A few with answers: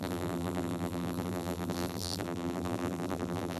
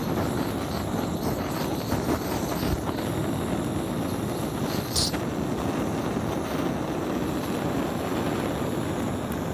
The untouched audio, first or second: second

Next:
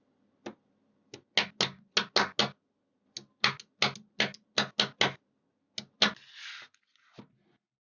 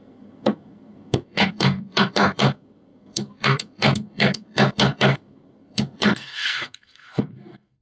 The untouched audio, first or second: first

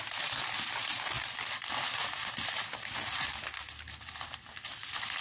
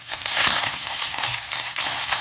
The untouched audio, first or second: first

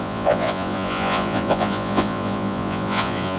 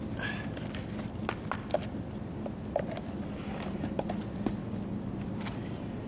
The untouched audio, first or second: second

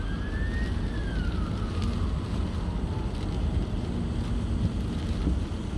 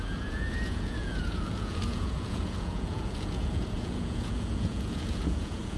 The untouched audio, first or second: first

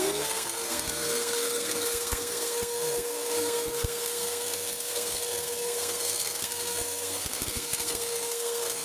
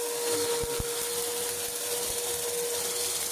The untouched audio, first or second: second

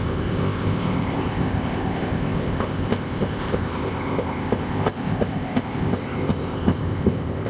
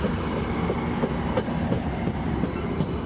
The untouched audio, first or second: second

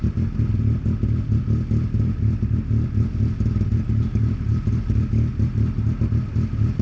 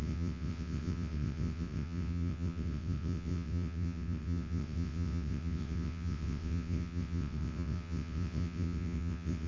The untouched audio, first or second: first